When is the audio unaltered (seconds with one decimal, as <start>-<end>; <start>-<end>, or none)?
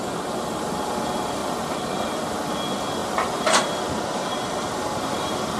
0.0-1.4; 2.5-3.0